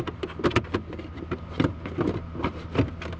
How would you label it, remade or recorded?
recorded